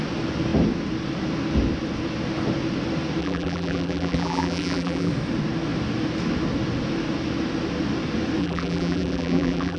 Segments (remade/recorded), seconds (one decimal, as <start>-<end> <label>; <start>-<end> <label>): 0.0-3.2 recorded; 3.2-5.1 remade; 5.1-8.4 recorded; 8.4-9.8 remade